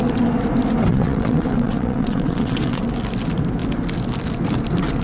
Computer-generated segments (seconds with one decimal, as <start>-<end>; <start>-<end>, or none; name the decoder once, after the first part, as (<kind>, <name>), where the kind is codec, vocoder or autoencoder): 0.9-2.8 (vocoder, WaveNeXt)